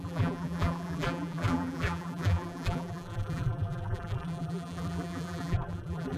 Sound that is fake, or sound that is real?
fake